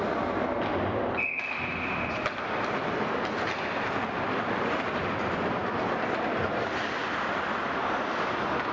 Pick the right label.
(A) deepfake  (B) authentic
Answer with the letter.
B